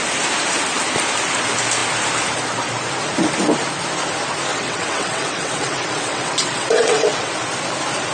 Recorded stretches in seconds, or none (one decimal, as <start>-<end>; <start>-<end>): 0.0-4.5; 7.3-8.1